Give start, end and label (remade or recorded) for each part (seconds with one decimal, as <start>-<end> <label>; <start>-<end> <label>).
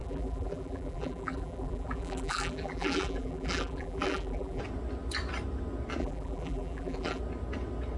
0.0-4.6 remade; 4.6-6.0 recorded; 6.0-7.2 remade; 7.2-8.0 recorded